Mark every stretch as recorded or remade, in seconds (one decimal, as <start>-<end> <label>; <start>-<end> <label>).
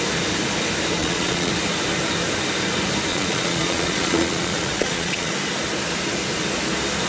0.0-1.0 recorded; 1.0-1.5 remade; 1.5-3.1 recorded; 3.1-5.3 remade; 5.3-7.1 recorded